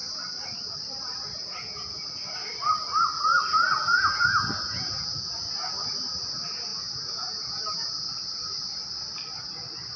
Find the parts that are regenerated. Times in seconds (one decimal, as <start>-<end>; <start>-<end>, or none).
1.4-2.0; 3.7-5.4; 6.7-8.1